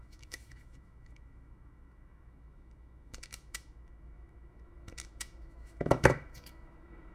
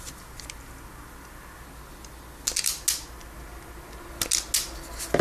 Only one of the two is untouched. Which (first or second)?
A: second